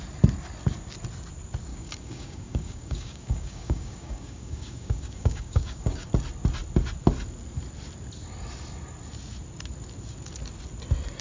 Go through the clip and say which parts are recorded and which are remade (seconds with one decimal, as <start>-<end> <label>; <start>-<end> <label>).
0.0-1.7 recorded; 1.7-6.1 remade; 6.1-11.2 recorded